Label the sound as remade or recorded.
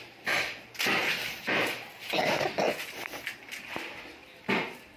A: remade